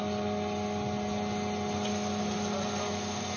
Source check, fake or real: real